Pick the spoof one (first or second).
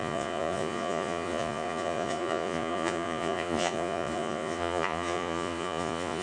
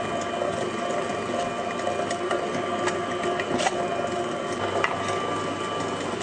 first